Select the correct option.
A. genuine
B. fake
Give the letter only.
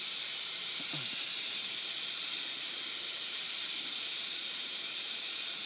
B